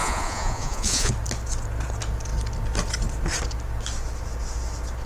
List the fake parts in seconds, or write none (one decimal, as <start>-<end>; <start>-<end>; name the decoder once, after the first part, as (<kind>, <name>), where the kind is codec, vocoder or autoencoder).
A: 0.0-1.1 (vocoder, Vocos)